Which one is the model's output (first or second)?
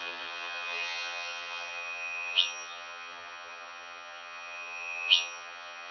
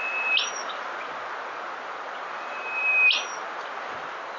first